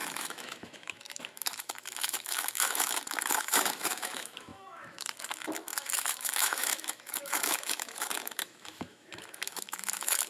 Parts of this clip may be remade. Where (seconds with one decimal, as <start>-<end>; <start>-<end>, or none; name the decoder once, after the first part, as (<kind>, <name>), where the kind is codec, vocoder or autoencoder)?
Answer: 0.0-10.3 (autoencoder, DAC-VAE)